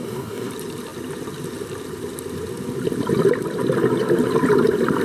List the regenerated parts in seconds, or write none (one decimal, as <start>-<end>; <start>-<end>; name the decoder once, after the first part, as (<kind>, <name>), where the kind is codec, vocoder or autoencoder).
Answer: 0.0-0.5 (codec, DAC)